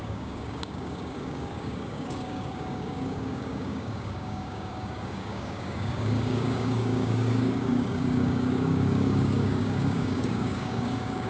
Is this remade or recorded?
remade